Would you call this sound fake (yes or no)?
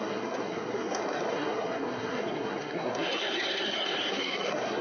yes